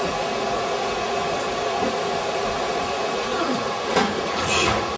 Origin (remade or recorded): remade